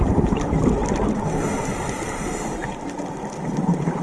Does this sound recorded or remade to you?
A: recorded